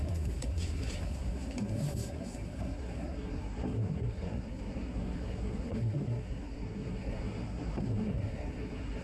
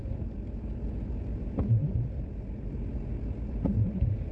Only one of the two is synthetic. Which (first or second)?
first